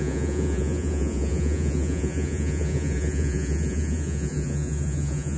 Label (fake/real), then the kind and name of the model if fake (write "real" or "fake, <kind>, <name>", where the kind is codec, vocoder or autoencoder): fake, vocoder, Vocos